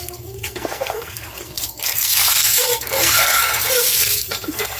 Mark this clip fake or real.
fake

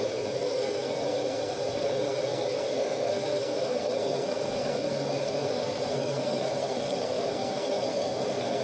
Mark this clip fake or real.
fake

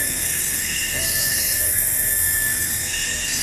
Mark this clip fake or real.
fake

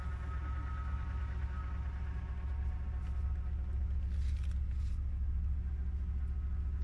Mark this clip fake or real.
real